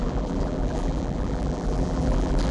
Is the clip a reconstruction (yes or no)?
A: yes